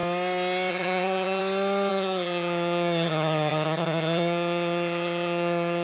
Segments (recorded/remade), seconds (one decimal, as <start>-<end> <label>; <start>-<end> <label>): 0.0-0.7 recorded; 0.7-1.4 remade; 1.4-1.9 recorded; 1.9-5.8 remade